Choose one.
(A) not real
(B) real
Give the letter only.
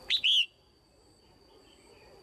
B